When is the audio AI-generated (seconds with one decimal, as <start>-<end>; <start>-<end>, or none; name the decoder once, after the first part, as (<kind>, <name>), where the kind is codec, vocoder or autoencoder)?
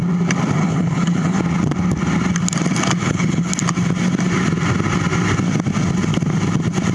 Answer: 0.6-1.4 (codec, HILCodec); 3.0-3.5